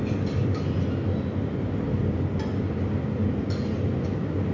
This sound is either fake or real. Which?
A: real